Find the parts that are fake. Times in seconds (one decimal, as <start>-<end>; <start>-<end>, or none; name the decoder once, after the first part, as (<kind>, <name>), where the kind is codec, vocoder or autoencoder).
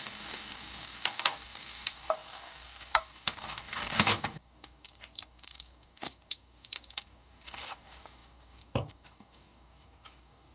0.0-10.5 (codec, DAC)